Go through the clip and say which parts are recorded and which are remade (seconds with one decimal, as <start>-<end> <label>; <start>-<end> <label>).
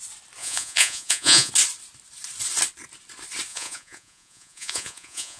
0.0-0.4 recorded; 0.4-1.5 remade; 1.5-3.5 recorded; 3.5-5.4 remade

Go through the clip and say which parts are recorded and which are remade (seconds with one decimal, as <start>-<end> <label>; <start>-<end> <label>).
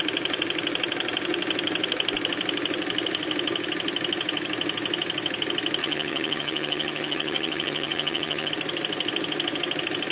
0.0-5.8 recorded; 5.8-8.5 remade; 8.5-10.1 recorded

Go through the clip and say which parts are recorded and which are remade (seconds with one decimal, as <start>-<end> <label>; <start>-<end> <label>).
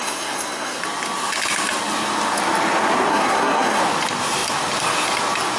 0.0-0.8 remade; 0.8-3.1 recorded; 3.1-3.8 remade; 3.8-5.6 recorded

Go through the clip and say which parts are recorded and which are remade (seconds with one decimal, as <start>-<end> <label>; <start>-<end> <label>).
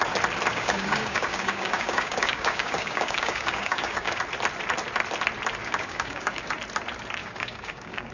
0.0-0.5 recorded; 0.5-4.2 remade; 4.2-5.6 recorded; 5.6-6.5 remade; 6.5-7.2 recorded; 7.2-8.1 remade